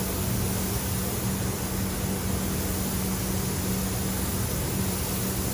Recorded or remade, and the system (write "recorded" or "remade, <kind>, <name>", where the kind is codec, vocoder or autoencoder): recorded